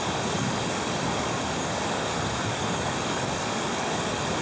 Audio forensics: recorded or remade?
remade